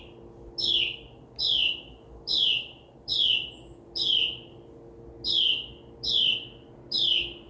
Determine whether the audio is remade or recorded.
recorded